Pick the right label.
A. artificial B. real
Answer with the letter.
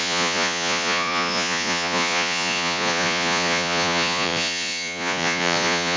A